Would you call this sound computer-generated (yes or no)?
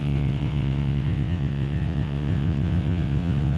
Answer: yes